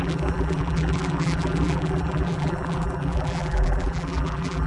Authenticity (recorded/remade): remade